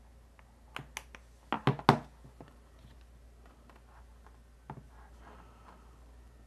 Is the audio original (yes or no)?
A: yes